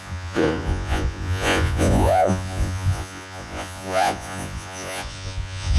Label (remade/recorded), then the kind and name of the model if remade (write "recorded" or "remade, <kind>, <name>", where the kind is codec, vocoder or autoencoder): remade, vocoder, Vocos